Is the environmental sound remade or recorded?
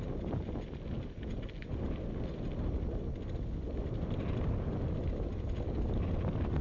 recorded